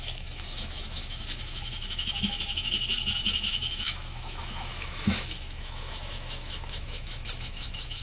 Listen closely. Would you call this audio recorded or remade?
remade